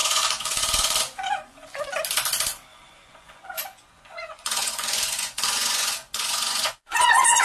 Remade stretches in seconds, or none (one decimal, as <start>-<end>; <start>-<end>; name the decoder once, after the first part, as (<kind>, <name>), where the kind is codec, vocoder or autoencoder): 0.0-1.9 (vocoder, Vocos); 2.7-7.4